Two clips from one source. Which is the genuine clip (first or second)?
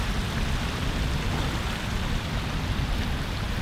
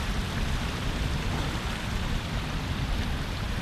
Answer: first